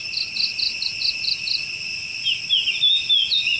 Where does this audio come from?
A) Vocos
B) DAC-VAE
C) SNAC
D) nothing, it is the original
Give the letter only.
D